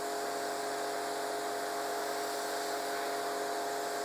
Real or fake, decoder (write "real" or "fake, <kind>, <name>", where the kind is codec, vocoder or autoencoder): real